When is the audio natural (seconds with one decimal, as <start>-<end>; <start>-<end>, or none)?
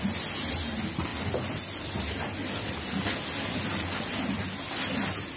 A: 0.0-5.4